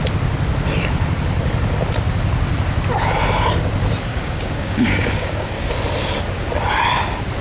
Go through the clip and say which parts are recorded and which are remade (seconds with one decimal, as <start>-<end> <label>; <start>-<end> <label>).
0.0-4.1 recorded; 4.1-5.7 remade; 5.7-7.4 recorded